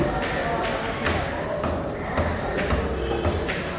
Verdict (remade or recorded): recorded